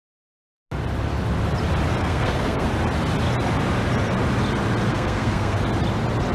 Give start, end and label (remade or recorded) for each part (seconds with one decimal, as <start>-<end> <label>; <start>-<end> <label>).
0.0-2.0 recorded; 2.0-2.7 remade; 2.7-4.9 recorded; 4.9-5.6 remade; 5.6-6.3 recorded